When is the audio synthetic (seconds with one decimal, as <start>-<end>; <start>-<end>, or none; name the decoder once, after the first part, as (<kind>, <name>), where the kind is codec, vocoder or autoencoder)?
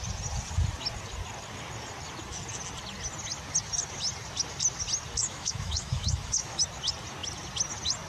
5.2-6.6 (autoencoder, DAC-VAE)